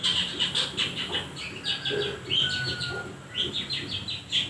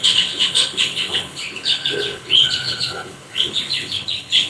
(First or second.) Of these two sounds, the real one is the first